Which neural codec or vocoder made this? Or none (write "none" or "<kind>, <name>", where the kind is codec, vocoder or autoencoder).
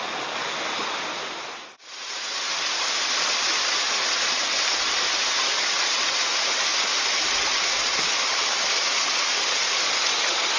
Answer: none